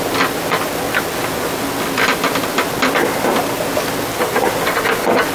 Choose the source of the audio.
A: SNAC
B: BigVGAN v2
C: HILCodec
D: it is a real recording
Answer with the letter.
D